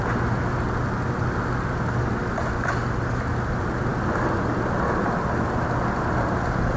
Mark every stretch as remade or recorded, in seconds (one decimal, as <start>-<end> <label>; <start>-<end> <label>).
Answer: 0.0-6.8 recorded